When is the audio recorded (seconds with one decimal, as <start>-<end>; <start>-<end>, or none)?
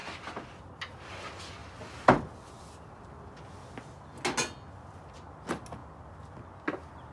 0.0-7.1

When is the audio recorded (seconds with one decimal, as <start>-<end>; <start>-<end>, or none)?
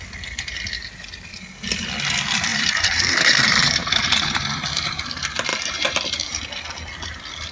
0.0-2.5; 5.0-5.5; 6.4-7.5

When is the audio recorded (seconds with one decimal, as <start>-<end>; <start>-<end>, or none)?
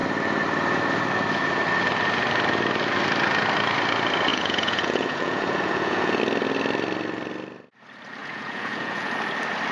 0.0-4.3; 6.2-8.2; 9.1-9.7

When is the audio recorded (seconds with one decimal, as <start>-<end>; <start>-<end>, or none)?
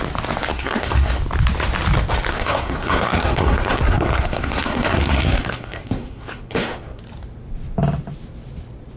0.0-0.5; 1.2-2.3; 7.0-9.0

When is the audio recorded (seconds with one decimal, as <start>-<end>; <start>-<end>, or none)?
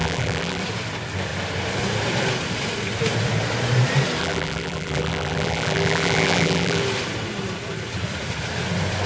0.6-4.2; 6.8-9.1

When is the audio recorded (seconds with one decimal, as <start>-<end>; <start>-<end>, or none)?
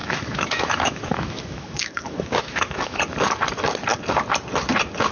3.0-5.1